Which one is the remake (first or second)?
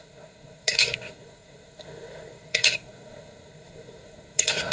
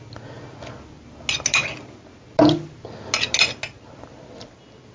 first